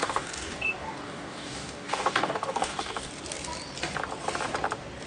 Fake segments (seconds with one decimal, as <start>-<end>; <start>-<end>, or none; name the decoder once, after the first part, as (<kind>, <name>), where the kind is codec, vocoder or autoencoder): 0.0-3.1 (codec, DAC)

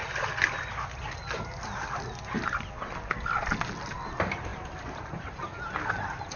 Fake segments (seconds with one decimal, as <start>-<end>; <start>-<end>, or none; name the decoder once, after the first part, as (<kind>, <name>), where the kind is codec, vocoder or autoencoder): 4.5-5.6 (vocoder, BigVGAN v2)

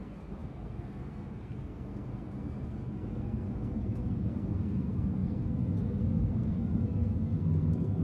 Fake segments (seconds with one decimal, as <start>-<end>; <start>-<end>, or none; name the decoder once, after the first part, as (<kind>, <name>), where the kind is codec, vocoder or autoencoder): 0.0-8.0 (codec, SNAC)

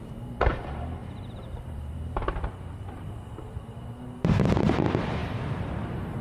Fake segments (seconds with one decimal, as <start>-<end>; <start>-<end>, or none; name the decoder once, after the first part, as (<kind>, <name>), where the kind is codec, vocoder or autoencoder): 0.0-5.2 (vocoder, BigVGAN v2)

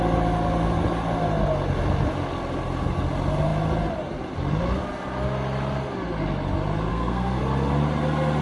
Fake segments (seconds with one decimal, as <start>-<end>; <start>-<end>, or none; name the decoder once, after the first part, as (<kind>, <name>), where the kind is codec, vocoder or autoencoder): 6.9-7.4 (codec, SNAC)

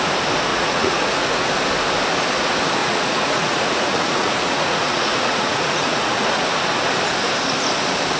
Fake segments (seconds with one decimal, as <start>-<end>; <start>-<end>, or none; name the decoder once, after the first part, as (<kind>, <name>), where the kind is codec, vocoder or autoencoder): 0.5-1.5 (vocoder, Vocos); 2.8-6.5

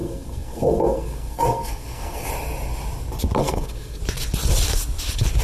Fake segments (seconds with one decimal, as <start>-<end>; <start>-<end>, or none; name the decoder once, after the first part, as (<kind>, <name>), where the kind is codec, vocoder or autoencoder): 0.0-2.3 (codec, SNAC); 3.4-4.0

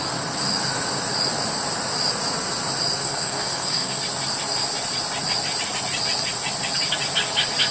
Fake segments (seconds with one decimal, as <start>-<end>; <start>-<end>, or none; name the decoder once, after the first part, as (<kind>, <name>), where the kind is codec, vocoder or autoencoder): 3.0-4.0 (codec, SNAC)